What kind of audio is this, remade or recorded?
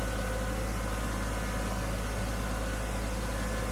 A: recorded